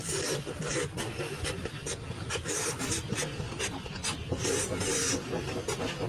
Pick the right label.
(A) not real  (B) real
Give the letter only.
B